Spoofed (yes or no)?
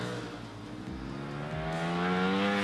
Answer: no